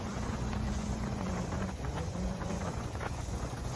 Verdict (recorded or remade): remade